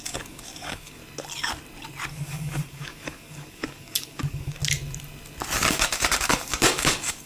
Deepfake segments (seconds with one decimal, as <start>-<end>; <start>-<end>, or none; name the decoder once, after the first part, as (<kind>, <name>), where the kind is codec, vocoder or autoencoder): 0.0-1.0 (codec, DAC); 2.1-4.6; 5.7-7.3